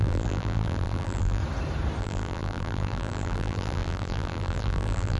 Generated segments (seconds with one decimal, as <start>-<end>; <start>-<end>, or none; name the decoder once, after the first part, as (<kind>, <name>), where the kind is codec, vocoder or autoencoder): 0.0-1.4 (vocoder, BigVGAN v2); 2.0-5.2